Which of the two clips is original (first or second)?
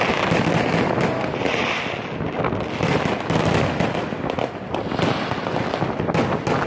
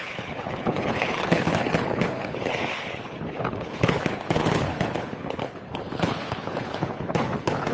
first